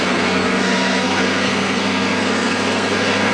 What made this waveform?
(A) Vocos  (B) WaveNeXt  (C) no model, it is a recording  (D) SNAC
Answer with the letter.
D